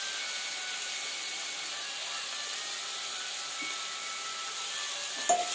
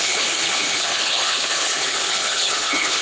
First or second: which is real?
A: first